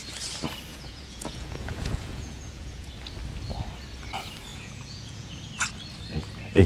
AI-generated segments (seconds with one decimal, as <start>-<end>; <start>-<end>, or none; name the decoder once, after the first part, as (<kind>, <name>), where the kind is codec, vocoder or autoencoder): 0.7-2.9 (vocoder, Vocos); 4.5-5.5